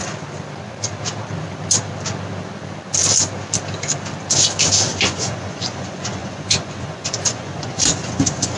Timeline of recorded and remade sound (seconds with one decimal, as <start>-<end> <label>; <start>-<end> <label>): 0.0-4.9 recorded; 4.9-8.6 remade